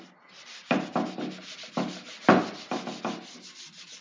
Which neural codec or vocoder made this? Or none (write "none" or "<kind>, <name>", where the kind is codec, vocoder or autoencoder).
none